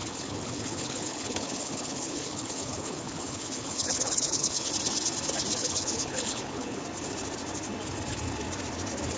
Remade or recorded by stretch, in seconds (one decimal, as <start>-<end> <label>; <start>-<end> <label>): 0.0-4.7 remade; 4.7-5.6 recorded; 5.6-6.8 remade; 6.8-9.2 recorded